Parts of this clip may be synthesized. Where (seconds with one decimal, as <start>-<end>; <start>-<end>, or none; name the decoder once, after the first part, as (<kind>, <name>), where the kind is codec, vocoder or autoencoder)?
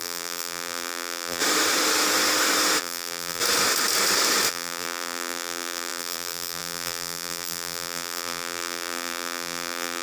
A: 0.0-1.4 (vocoder, BigVGAN v2); 2.8-3.4; 4.5-10.0